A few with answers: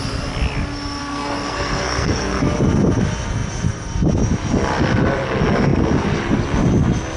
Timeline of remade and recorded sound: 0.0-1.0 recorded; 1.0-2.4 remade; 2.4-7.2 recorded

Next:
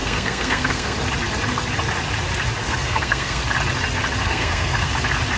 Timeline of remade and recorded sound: 0.0-1.0 remade; 1.0-2.6 recorded; 2.6-3.4 remade; 3.4-4.2 recorded; 4.2-4.9 remade; 4.9-5.4 recorded